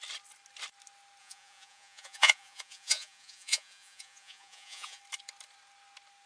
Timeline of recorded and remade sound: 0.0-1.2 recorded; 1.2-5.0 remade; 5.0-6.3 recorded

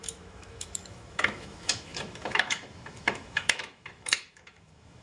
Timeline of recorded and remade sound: 0.0-5.0 remade